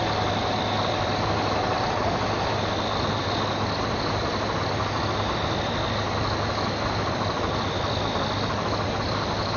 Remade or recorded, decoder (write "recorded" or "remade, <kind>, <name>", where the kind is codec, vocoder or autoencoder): recorded